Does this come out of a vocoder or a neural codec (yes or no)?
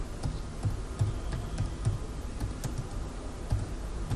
no